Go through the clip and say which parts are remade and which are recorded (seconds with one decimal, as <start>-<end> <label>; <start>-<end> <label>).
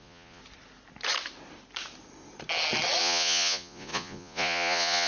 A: 0.0-0.4 remade; 0.4-3.0 recorded; 3.0-5.1 remade